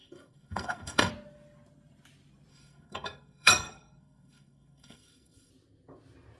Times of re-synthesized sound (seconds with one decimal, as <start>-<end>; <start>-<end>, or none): 0.0-1.1; 2.5-5.5

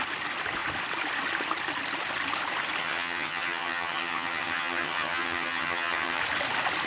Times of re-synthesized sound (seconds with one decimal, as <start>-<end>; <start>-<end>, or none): 2.8-6.2

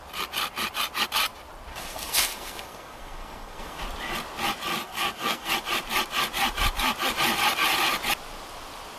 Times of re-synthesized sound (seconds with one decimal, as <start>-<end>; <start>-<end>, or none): 1.7-3.8; 4.8-5.5

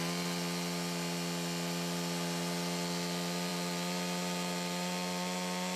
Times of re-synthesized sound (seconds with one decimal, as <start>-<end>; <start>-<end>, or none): none

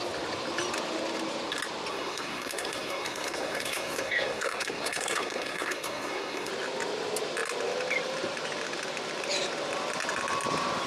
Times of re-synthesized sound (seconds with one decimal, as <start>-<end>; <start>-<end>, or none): 1.9-6.5

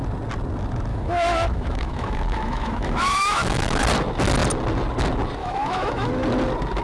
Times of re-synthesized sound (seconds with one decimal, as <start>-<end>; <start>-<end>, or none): 0.9-3.8; 5.4-6.1

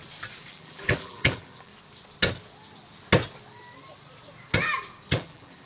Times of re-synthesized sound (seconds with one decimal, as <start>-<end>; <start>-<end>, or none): 0.5-1.7; 5.1-5.7